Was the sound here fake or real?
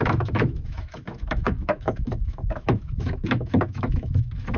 fake